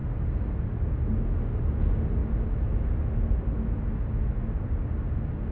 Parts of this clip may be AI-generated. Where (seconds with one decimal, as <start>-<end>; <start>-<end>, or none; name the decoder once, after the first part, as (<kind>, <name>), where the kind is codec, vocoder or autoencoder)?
none